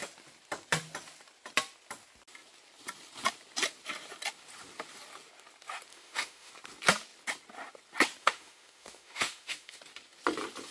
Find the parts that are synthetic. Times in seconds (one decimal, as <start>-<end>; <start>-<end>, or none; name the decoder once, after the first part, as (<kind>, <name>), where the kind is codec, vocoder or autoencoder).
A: 5.9-6.5 (autoencoder, DAC-VAE); 8.2-9.8